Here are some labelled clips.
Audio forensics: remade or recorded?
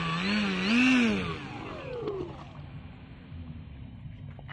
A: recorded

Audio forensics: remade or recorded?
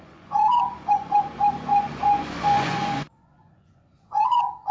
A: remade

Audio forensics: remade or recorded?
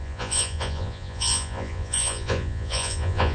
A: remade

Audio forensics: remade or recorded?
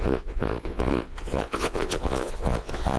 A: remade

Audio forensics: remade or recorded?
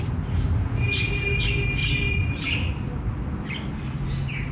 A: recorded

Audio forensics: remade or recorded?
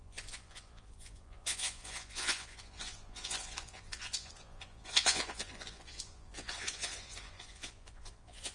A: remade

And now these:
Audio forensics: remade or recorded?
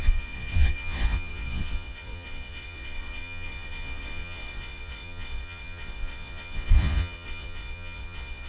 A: remade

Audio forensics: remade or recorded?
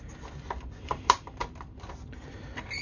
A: recorded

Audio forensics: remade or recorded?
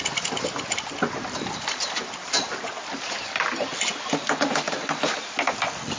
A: recorded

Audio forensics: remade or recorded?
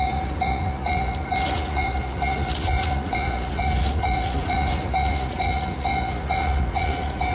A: remade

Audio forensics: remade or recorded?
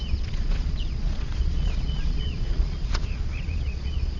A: remade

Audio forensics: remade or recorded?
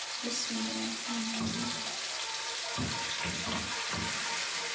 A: recorded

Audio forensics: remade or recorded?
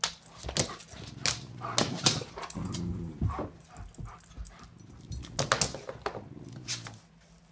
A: recorded